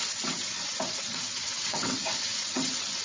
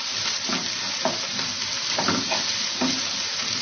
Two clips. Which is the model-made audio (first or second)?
first